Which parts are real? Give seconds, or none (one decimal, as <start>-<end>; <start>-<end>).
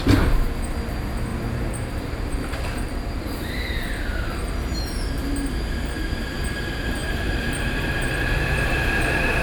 0.0-1.3; 5.1-7.0